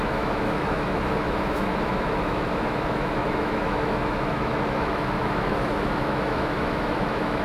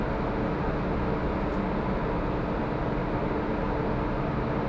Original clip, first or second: second